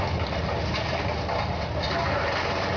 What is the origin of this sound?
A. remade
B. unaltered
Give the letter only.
B